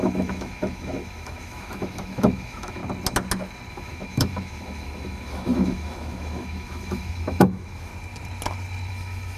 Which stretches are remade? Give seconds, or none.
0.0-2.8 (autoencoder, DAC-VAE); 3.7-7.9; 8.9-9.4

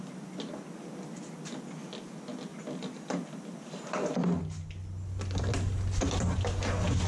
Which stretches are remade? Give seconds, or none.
none

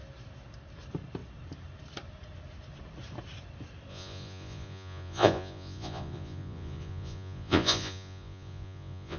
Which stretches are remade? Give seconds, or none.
3.9-9.2 (vocoder, Vocos)

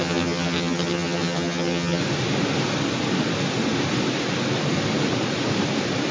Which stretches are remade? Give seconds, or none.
0.0-2.0 (vocoder, HiFi-GAN)

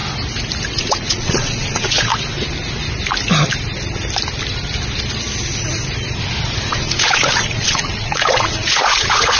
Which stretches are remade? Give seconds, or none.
0.8-2.1 (vocoder, Vocos); 6.7-9.4

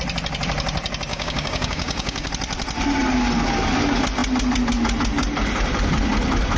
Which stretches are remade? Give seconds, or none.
1.1-2.3 (codec, DAC)